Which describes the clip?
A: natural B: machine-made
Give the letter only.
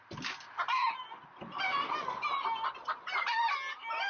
A